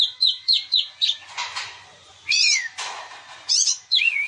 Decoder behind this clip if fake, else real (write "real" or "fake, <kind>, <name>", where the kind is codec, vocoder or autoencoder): fake, vocoder, Vocos